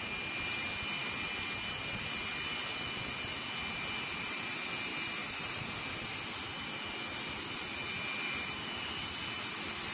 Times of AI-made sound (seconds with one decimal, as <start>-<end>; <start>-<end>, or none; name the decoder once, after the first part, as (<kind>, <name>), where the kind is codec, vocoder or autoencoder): none